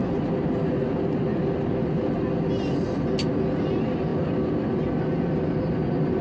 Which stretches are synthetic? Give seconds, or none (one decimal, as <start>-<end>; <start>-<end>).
none